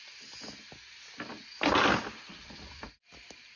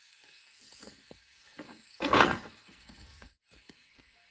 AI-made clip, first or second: second